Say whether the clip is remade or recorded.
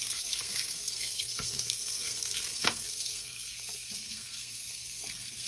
remade